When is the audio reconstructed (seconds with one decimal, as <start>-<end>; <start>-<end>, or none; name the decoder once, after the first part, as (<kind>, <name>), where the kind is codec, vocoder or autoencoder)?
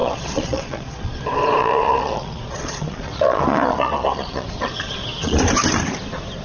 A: 0.0-1.2 (vocoder, Vocos); 1.6-5.4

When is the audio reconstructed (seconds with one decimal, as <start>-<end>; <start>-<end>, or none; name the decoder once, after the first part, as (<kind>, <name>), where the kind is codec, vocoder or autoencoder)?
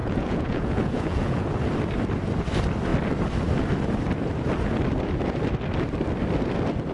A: 0.0-1.5 (vocoder, Vocos)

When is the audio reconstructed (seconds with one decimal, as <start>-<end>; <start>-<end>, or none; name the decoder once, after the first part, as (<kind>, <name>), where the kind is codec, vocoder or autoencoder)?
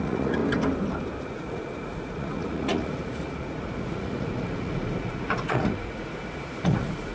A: 0.0-0.4 (vocoder, Vocos); 1.2-7.1